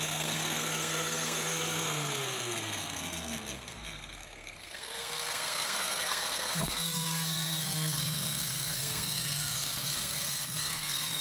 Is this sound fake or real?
fake